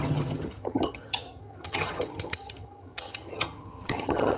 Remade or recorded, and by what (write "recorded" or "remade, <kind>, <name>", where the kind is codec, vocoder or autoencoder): remade, vocoder, HiFi-GAN